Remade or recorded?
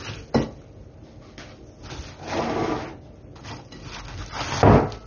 recorded